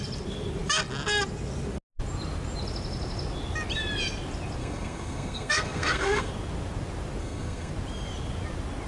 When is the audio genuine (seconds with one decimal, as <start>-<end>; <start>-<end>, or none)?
0.0-4.6; 6.3-7.2; 7.7-8.9